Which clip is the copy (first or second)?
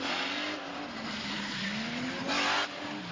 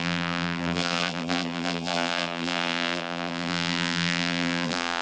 second